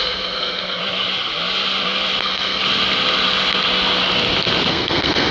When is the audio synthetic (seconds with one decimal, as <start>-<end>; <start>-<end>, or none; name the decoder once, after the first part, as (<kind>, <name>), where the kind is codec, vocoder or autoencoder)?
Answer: 0.0-0.8 (codec, SNAC); 2.2-2.6; 4.7-5.3